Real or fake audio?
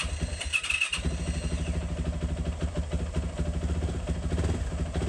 real